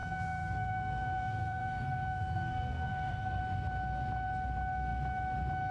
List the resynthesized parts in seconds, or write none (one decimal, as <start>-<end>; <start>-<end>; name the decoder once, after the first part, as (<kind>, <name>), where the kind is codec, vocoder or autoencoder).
0.0-3.4 (codec, SNAC)